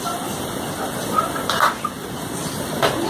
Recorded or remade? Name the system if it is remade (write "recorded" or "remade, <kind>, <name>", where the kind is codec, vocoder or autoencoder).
recorded